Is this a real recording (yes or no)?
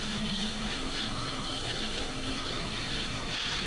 no